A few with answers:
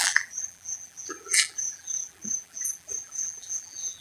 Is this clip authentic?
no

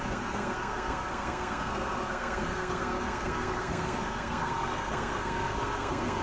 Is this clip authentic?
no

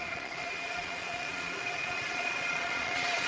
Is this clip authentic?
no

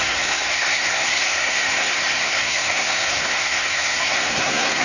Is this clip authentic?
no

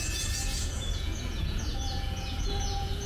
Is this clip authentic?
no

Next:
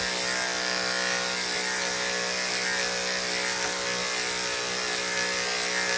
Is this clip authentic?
yes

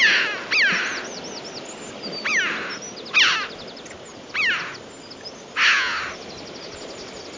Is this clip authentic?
yes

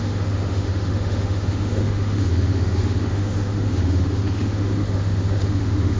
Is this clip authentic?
no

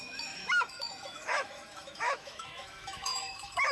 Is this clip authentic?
no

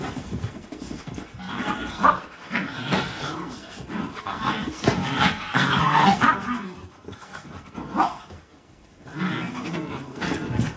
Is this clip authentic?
no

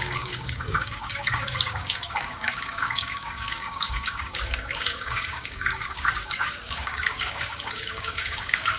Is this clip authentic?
no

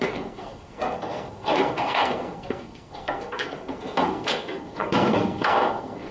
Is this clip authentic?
no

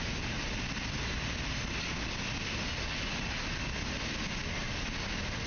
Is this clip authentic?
yes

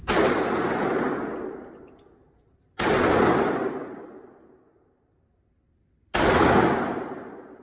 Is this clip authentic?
yes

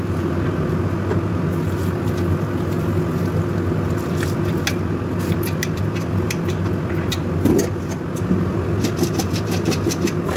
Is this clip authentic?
yes